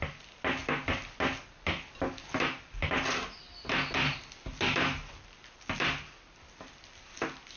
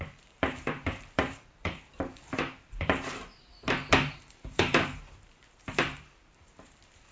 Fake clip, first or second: second